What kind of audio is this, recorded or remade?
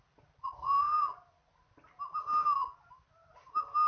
recorded